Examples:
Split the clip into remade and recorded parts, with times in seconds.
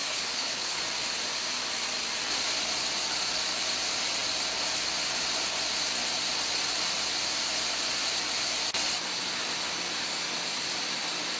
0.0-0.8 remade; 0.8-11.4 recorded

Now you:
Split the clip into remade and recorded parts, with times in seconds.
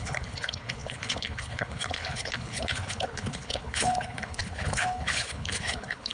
0.0-6.1 remade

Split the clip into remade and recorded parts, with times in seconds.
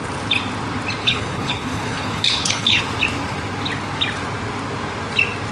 0.0-1.0 recorded; 1.0-2.8 remade; 2.8-5.5 recorded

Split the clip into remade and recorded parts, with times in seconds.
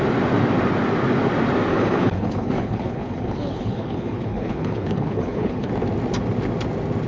0.0-1.7 recorded; 1.7-5.7 remade; 5.7-7.1 recorded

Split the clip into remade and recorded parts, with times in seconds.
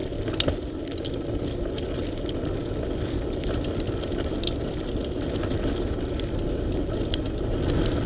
0.0-8.1 recorded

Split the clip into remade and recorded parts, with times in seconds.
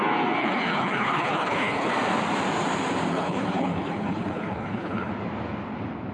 0.0-0.4 recorded; 0.4-1.9 remade; 1.9-3.1 recorded; 3.1-5.1 remade; 5.1-6.1 recorded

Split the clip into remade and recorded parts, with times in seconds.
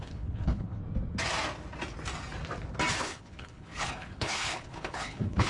0.0-0.8 remade; 0.8-3.0 recorded; 3.0-5.5 remade